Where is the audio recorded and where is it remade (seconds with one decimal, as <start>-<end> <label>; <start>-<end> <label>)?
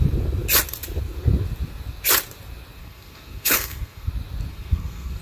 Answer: 0.0-2.8 recorded; 2.8-4.1 remade; 4.1-4.5 recorded; 4.5-5.2 remade